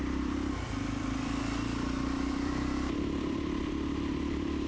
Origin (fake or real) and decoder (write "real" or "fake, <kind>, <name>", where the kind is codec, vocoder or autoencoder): fake, vocoder, BigVGAN v2